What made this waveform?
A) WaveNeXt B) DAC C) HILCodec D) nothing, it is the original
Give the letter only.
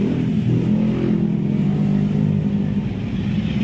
D